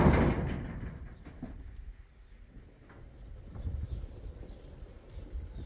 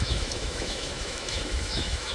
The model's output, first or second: second